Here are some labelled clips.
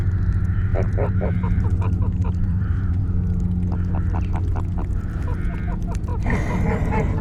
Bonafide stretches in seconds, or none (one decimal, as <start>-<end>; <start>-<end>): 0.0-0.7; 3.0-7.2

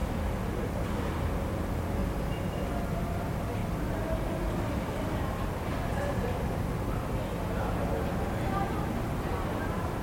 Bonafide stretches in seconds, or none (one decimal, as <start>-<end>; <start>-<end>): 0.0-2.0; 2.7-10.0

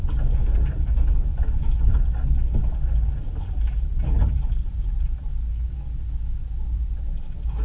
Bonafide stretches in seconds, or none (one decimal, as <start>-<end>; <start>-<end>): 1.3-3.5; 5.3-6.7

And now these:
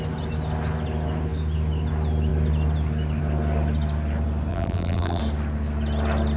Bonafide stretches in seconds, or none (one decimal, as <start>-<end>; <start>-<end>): 0.0-4.5; 5.2-6.4

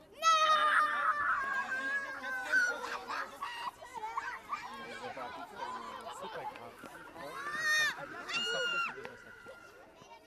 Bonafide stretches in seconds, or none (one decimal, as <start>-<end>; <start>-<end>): 0.0-8.7

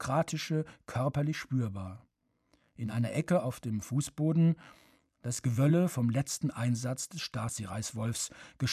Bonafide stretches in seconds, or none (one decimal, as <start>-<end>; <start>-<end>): 0.0-2.0; 3.3-4.6; 5.7-8.7